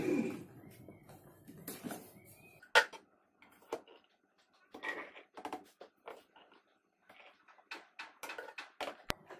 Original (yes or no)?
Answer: yes